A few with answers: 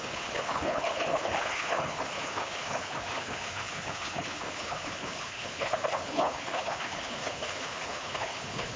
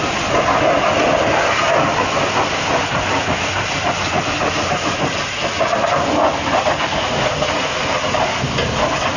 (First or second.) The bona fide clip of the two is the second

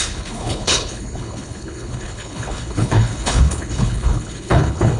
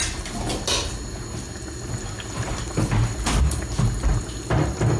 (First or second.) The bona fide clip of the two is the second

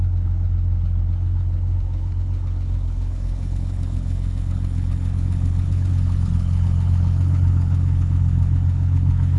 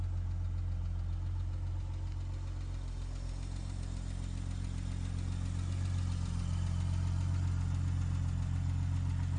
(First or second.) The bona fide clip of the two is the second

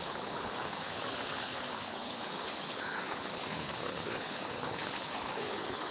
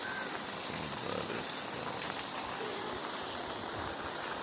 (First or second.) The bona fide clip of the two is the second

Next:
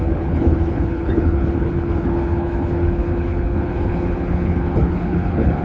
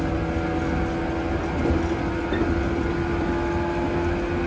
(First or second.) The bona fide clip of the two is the second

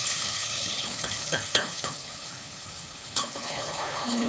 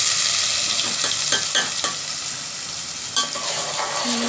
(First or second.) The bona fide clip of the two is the second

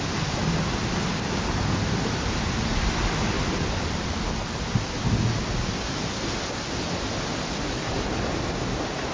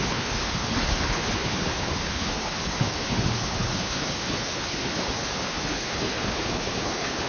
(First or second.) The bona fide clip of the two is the first